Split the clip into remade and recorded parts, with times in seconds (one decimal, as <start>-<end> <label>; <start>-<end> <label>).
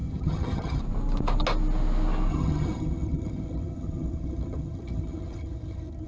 0.0-0.8 remade; 0.8-2.3 recorded; 2.3-6.1 remade